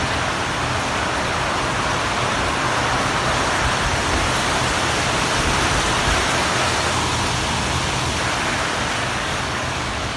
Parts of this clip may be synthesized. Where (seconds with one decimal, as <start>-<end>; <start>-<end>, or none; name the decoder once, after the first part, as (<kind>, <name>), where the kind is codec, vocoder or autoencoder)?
9.1-10.2 (codec, DAC)